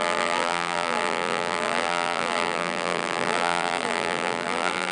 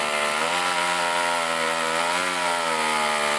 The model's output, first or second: first